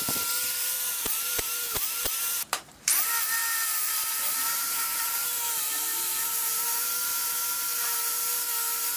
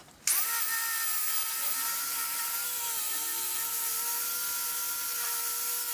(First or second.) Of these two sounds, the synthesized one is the first